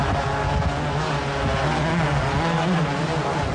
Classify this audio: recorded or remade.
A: recorded